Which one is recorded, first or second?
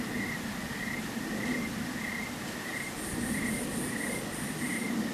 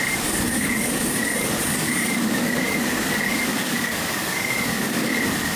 first